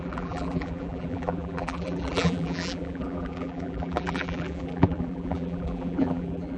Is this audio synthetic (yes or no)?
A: yes